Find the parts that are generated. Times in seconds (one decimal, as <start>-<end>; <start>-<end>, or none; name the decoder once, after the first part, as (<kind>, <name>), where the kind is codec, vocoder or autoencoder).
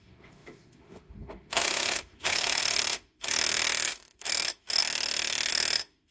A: 0.0-6.1 (autoencoder, DAC-VAE)